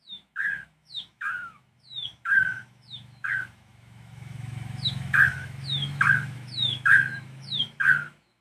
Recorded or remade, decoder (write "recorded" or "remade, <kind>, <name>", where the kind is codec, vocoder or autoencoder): remade, autoencoder, DAC-VAE